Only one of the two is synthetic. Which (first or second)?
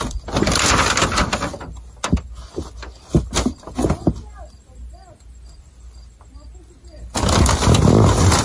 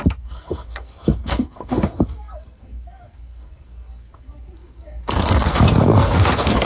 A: second